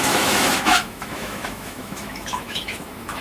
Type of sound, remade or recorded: remade